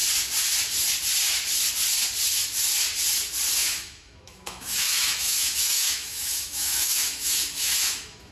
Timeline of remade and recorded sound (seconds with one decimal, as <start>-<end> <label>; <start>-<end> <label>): 0.0-3.6 recorded; 3.6-8.3 remade